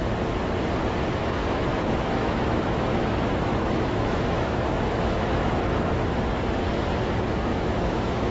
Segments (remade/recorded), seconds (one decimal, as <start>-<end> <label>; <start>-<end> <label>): 0.0-1.4 recorded; 1.4-5.5 remade; 5.5-7.5 recorded; 7.5-8.3 remade